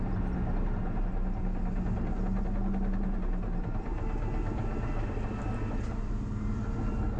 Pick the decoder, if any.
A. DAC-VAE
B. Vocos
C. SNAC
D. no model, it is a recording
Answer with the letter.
D